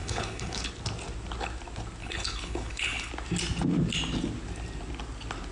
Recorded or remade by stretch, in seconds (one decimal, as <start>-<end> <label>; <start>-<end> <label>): 0.0-0.7 remade; 0.7-2.0 recorded; 2.0-3.1 remade; 3.1-5.5 recorded

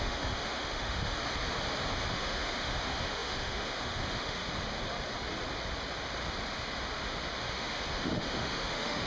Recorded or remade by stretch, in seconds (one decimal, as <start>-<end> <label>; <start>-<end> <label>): 0.0-1.2 remade; 1.2-2.1 recorded; 2.1-4.4 remade; 4.4-7.4 recorded; 7.4-9.1 remade

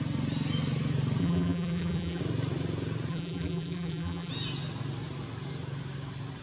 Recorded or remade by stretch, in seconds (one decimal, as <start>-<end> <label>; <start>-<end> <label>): 0.0-1.2 recorded; 1.2-2.2 remade; 2.2-3.1 recorded; 3.1-4.3 remade; 4.3-6.4 recorded

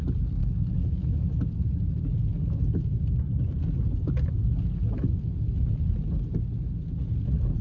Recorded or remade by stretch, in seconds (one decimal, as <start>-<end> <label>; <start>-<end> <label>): 0.0-0.4 recorded; 0.4-1.4 remade; 1.4-7.6 recorded

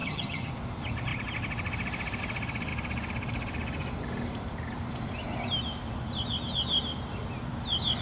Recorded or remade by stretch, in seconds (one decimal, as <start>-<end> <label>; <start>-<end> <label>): 0.0-0.5 remade; 0.5-8.0 recorded